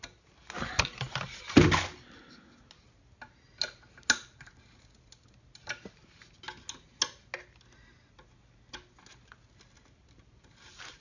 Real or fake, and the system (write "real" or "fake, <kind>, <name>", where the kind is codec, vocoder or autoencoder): real